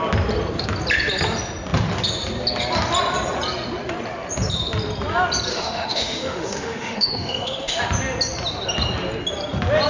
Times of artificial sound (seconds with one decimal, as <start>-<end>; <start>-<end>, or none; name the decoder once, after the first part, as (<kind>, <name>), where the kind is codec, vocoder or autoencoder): 5.5-7.8 (autoencoder, DAC-VAE)